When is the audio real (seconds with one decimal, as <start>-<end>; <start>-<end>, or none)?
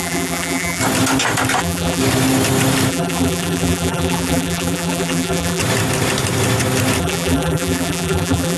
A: 0.8-1.6; 2.0-2.9; 5.6-7.0